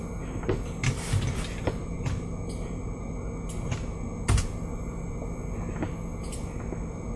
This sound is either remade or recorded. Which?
recorded